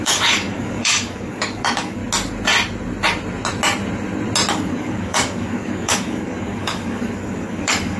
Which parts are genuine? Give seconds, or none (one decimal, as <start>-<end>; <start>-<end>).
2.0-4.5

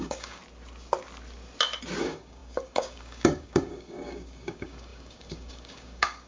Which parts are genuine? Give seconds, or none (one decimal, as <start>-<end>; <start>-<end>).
0.4-2.0

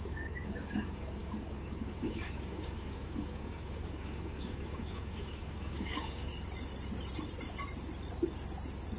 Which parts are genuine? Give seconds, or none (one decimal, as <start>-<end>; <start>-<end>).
6.3-9.0

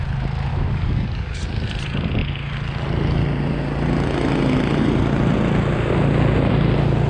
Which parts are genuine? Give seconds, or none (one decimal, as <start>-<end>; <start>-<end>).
0.0-0.5; 1.4-7.1

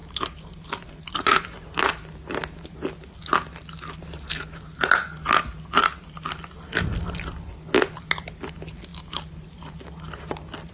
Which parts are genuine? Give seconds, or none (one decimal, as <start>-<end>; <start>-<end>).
0.0-10.7

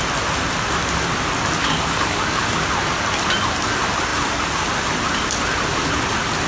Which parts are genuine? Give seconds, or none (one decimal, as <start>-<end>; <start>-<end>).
0.0-1.6; 2.6-6.5